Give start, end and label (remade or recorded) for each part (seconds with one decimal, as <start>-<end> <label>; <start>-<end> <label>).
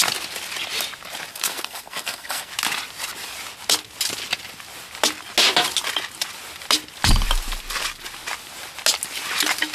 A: 0.0-1.3 recorded; 1.3-2.5 remade; 2.5-9.7 recorded